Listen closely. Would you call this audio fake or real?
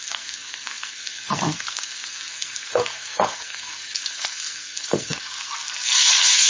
fake